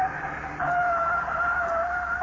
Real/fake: fake